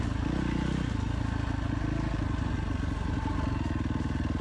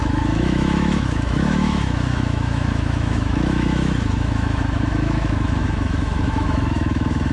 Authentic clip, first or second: first